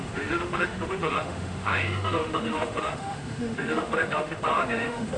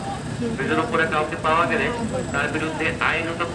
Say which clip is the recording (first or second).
second